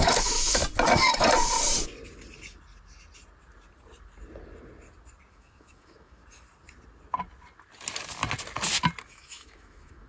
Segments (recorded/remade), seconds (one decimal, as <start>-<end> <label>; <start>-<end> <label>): 0.0-0.6 remade; 0.6-5.3 recorded; 5.3-6.2 remade; 6.2-9.0 recorded; 9.0-10.1 remade